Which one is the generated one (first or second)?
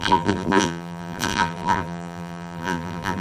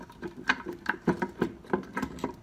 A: first